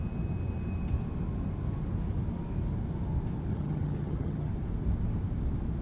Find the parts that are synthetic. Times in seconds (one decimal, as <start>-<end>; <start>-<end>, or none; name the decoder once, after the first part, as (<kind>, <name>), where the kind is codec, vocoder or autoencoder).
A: 3.5-4.5 (vocoder, HiFi-GAN)